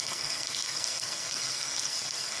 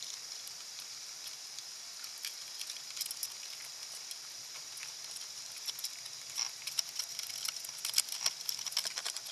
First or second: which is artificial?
first